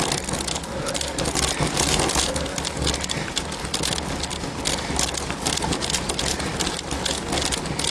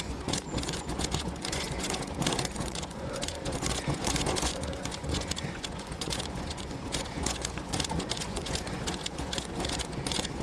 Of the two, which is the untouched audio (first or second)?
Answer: first